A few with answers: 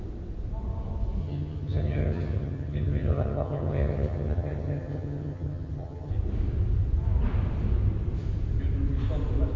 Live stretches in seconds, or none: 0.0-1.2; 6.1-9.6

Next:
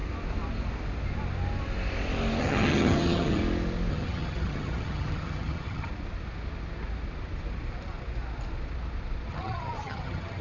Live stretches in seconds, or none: 0.0-2.4; 3.4-3.9; 5.9-9.3

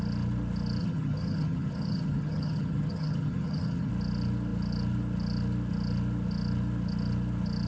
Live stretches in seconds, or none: 0.0-0.8; 3.9-7.7